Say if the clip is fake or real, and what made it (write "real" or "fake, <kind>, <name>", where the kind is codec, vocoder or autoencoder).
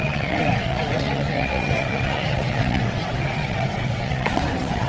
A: fake, vocoder, WaveNeXt